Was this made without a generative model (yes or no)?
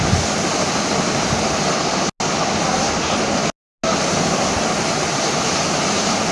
yes